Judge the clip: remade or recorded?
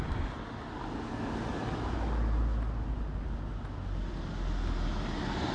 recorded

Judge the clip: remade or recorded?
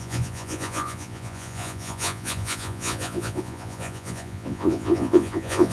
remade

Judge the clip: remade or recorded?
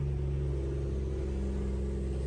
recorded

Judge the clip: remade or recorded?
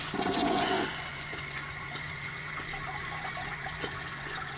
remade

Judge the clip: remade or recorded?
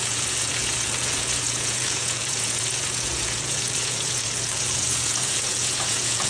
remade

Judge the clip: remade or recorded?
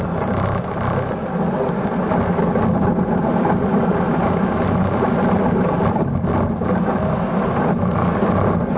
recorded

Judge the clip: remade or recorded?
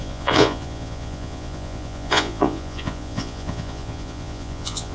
remade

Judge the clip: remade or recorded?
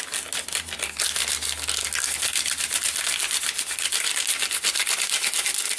recorded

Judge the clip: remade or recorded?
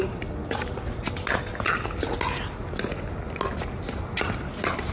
recorded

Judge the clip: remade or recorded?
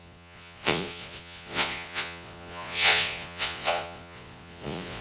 remade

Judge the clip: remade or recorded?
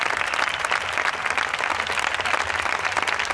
recorded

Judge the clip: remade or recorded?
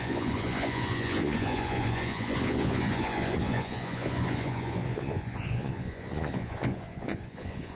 remade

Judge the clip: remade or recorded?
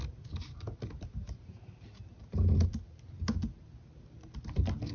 recorded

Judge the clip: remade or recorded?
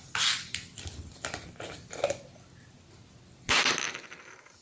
recorded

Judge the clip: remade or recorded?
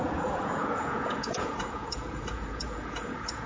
remade